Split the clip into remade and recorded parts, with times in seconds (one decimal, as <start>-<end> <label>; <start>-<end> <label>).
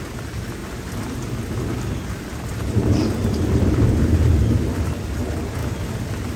0.0-2.5 recorded; 2.5-4.3 remade; 4.3-6.4 recorded